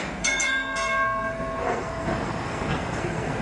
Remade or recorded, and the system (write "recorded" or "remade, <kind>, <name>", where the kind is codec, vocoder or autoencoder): remade, codec, SNAC